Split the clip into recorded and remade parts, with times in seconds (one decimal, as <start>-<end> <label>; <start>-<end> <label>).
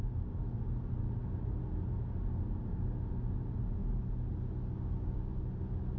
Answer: 0.0-6.0 recorded